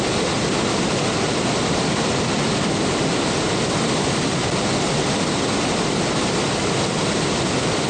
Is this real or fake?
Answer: real